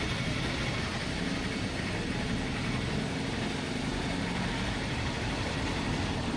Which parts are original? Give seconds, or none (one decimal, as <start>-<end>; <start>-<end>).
0.9-4.6